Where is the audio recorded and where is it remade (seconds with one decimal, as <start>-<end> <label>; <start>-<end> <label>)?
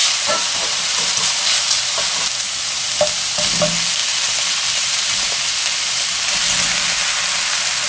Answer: 0.0-3.0 remade; 3.0-4.0 recorded; 4.0-5.4 remade; 5.4-7.9 recorded